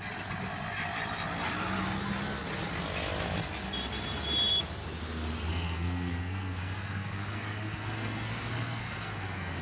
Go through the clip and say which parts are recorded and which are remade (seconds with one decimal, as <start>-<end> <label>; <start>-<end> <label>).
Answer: 0.0-5.5 recorded; 5.5-9.6 remade